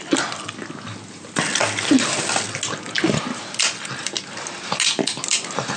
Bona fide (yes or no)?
yes